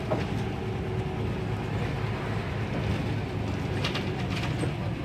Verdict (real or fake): real